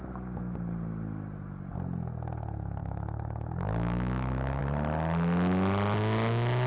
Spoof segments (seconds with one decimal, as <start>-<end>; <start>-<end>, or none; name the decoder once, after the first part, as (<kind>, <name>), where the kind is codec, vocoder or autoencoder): 2.8-4.6 (autoencoder, DAC-VAE)

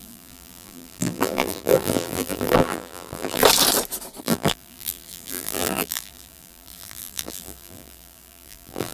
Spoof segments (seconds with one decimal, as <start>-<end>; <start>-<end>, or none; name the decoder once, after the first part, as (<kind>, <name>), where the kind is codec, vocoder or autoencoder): 0.0-3.4 (vocoder, BigVGAN v2); 4.2-8.9

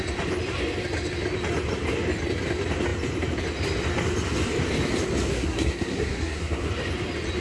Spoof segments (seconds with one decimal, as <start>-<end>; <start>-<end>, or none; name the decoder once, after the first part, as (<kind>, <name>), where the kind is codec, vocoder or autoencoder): 5.3-6.7 (codec, SNAC)

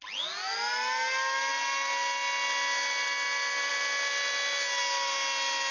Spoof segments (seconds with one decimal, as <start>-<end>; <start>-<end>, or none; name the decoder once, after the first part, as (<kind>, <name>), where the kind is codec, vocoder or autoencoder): none